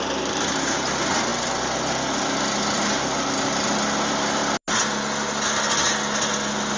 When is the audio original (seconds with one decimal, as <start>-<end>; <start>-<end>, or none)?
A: 0.0-6.8